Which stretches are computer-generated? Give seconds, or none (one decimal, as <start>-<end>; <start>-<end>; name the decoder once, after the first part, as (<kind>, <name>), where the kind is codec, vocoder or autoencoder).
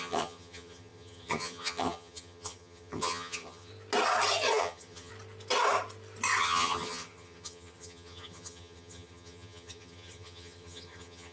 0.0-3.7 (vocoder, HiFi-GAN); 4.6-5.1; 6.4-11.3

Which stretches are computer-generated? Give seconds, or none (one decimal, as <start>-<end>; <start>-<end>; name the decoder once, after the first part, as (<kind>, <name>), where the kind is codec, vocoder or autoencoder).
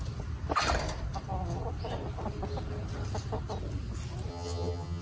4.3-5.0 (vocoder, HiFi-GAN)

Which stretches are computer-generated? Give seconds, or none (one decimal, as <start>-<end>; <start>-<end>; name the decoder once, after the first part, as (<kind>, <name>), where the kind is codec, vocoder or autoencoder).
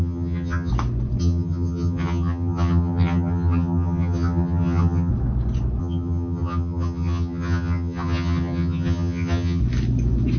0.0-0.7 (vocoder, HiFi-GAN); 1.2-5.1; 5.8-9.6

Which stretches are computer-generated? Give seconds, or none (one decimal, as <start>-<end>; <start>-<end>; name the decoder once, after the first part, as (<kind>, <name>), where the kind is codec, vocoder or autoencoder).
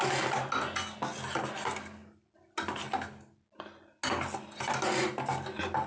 none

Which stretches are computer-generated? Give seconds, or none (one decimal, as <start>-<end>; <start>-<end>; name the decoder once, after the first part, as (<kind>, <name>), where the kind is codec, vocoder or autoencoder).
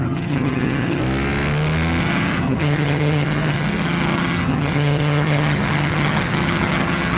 0.0-1.0 (vocoder, HiFi-GAN); 2.0-7.2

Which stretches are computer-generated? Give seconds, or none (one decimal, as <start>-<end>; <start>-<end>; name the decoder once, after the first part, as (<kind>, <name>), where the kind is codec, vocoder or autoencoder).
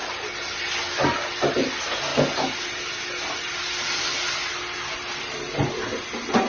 none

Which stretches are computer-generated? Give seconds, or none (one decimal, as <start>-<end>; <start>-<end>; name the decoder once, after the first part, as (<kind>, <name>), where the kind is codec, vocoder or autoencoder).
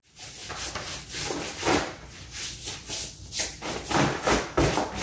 none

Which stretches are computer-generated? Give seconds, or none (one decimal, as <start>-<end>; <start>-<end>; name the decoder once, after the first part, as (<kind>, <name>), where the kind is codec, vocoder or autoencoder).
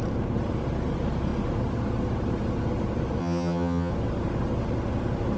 3.2-3.9 (vocoder, HiFi-GAN)